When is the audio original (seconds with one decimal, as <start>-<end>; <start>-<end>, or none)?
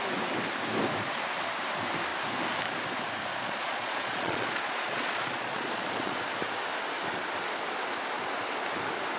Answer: 0.0-3.3; 6.2-9.2